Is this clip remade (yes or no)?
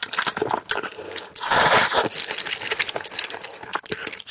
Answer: no